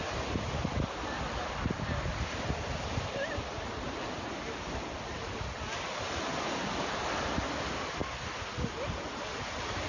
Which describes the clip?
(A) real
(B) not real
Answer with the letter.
A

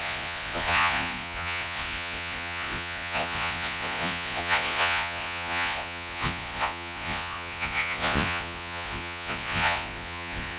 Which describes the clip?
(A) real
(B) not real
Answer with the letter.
B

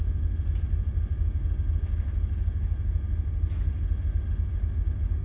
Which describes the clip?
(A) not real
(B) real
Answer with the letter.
B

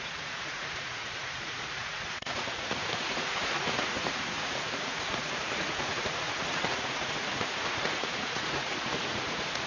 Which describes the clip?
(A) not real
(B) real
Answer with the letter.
A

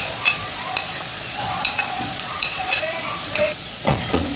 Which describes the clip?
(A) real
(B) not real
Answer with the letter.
B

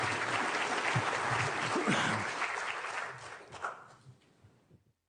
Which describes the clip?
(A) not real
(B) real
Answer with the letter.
B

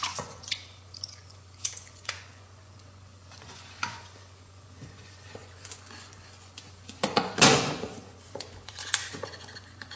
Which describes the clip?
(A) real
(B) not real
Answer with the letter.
B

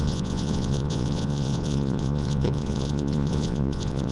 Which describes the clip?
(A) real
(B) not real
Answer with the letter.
B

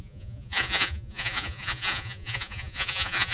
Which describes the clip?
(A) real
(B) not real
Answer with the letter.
B